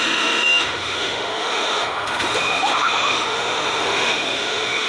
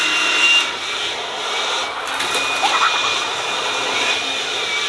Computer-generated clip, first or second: first